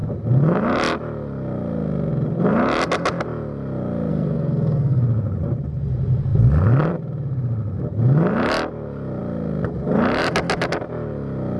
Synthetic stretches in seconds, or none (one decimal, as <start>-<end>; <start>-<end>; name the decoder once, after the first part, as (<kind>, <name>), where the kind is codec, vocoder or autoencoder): 4.1-5.0 (codec, SNAC)